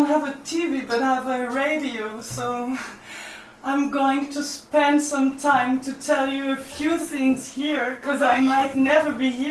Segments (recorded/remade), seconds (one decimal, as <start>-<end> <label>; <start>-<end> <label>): 0.0-2.1 recorded; 2.1-2.8 remade; 2.8-7.0 recorded; 7.0-8.9 remade; 8.9-9.5 recorded